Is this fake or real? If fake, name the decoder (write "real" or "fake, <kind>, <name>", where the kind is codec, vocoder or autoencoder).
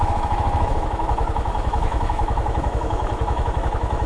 fake, autoencoder, DAC-VAE